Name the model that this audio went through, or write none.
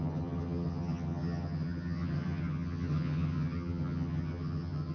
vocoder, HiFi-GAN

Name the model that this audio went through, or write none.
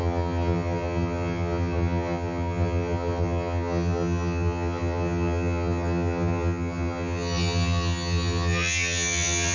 vocoder, HiFi-GAN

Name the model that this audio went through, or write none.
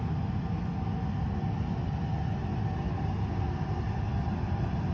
none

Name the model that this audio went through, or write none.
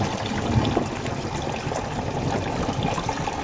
none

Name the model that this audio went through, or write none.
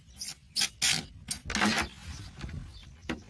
none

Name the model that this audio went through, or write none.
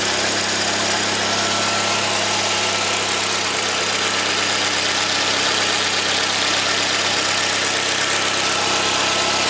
none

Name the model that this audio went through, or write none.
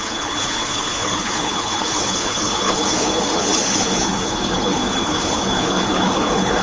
codec, HILCodec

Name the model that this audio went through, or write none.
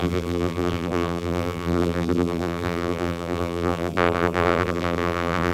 vocoder, BigVGAN v2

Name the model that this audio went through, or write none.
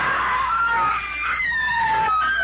codec, DAC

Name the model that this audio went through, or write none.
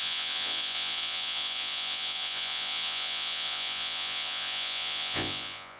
vocoder, Vocos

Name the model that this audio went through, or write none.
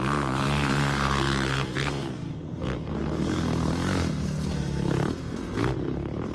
codec, SNAC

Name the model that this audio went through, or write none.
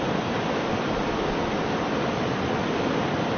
none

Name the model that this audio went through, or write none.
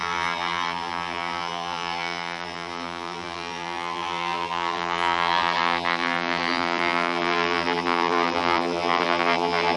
vocoder, BigVGAN v2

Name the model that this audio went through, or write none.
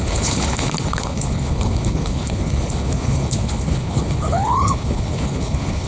codec, HILCodec